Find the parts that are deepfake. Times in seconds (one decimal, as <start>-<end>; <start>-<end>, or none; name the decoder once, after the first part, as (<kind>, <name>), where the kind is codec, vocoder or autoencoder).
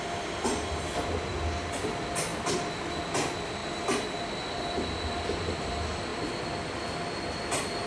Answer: 2.3-3.0 (vocoder, BigVGAN v2); 3.6-4.1